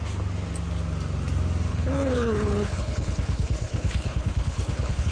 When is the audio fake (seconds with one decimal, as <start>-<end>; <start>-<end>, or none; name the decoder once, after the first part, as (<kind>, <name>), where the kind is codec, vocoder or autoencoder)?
1.7-5.1 (codec, HILCodec)